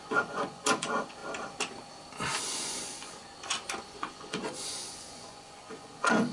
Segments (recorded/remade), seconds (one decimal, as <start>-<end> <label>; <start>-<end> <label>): 0.0-1.2 remade; 1.2-2.4 recorded; 2.4-3.2 remade; 3.2-3.8 recorded; 3.8-6.3 remade